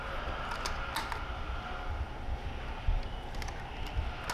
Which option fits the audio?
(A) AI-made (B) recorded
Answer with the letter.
B